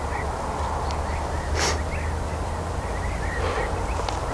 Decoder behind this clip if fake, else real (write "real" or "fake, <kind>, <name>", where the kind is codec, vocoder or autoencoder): real